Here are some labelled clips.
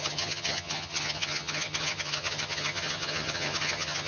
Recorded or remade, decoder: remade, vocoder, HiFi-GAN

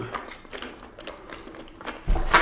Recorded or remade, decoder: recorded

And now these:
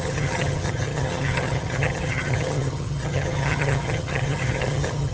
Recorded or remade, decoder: remade, vocoder, HiFi-GAN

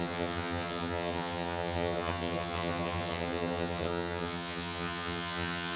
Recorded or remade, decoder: remade, vocoder, HiFi-GAN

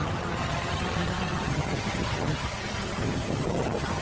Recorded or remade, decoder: remade, vocoder, HiFi-GAN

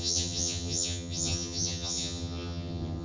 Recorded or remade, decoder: remade, vocoder, HiFi-GAN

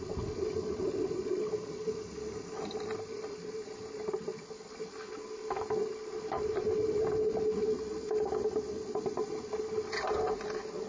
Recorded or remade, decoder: recorded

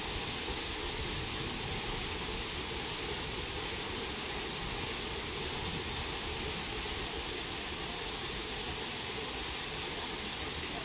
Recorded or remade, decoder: recorded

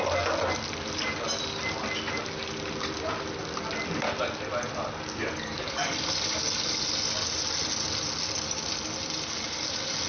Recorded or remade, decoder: recorded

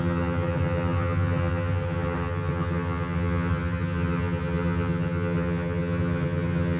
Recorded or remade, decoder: remade, vocoder, HiFi-GAN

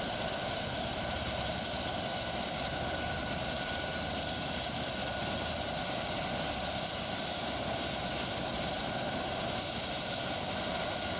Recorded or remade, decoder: recorded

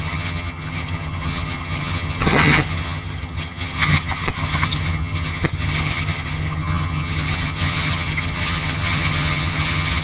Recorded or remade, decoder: remade, vocoder, HiFi-GAN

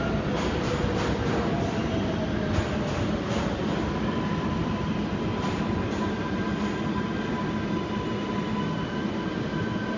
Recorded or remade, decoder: recorded